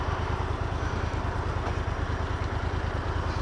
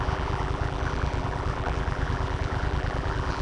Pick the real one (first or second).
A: first